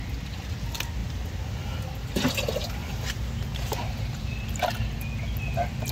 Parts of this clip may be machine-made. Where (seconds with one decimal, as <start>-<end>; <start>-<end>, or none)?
2.8-4.3